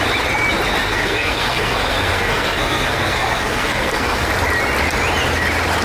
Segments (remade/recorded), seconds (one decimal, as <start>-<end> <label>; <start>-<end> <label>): 0.0-0.8 recorded; 0.8-4.3 remade; 4.3-5.8 recorded